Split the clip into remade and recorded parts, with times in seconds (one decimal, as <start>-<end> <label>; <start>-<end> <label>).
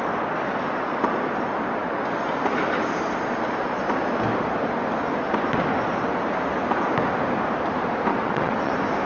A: 0.0-8.1 recorded; 8.1-8.7 remade; 8.7-9.1 recorded